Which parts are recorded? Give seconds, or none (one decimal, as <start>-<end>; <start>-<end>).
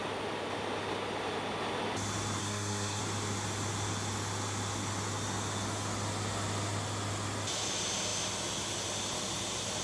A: 0.0-2.4; 3.0-9.8